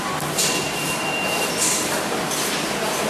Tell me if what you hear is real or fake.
real